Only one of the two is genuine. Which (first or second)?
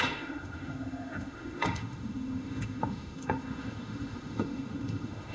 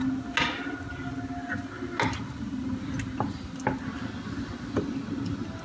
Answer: second